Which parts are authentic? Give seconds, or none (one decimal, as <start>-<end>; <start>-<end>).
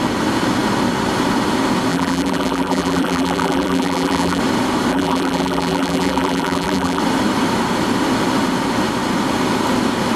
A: 0.0-1.9; 4.4-4.9; 7.0-10.2